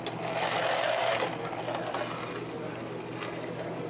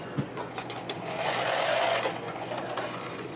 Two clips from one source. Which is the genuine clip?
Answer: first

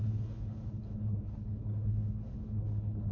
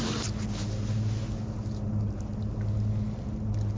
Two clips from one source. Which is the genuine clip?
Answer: second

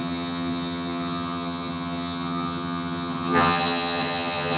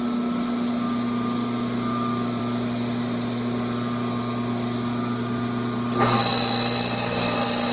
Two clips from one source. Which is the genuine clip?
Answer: second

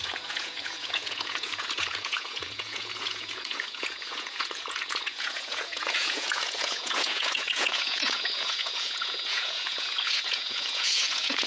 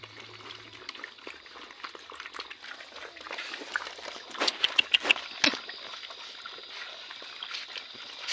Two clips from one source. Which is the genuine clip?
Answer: second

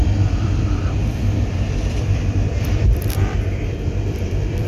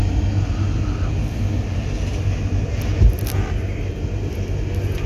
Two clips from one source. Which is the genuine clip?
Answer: second